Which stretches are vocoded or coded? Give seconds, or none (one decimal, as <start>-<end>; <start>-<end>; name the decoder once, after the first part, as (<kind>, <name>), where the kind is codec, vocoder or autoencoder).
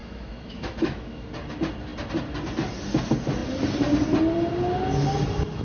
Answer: 0.0-1.3 (autoencoder, DAC-VAE)